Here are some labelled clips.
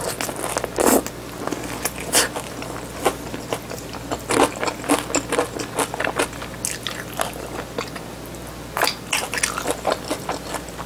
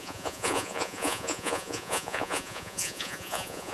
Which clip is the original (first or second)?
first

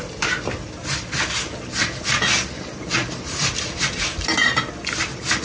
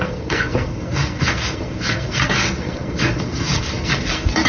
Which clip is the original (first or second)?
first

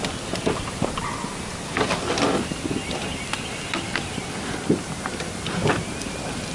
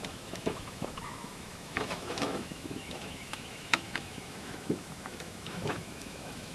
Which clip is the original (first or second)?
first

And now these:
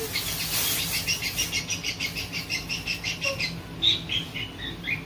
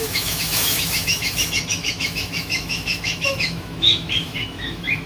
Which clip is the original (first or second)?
first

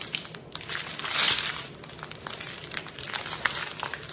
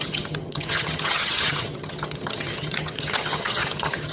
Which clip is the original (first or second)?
first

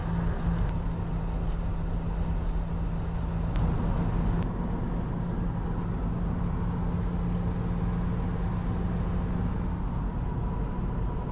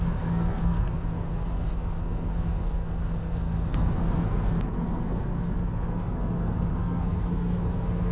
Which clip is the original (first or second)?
first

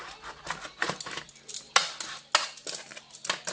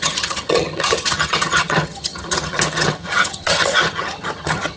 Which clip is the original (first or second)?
first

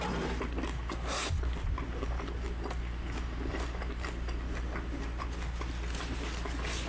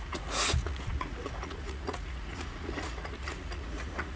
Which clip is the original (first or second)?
first